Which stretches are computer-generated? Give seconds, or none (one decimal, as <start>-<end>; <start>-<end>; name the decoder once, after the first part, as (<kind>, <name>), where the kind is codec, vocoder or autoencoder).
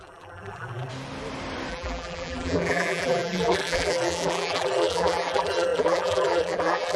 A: 0.0-0.9 (vocoder, BigVGAN v2); 1.7-7.0